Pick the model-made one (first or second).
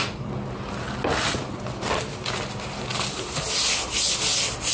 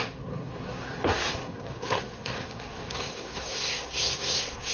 second